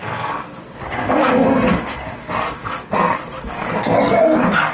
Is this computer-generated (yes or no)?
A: yes